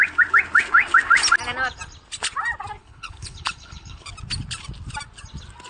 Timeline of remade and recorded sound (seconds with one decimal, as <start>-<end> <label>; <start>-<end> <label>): 0.0-2.8 recorded; 2.8-4.1 remade; 4.1-5.7 recorded